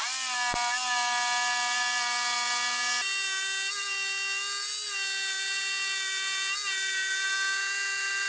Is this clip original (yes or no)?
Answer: yes